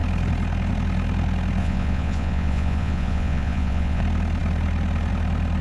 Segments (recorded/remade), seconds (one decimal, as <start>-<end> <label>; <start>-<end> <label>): 0.0-1.6 recorded; 1.6-4.0 remade; 4.0-5.6 recorded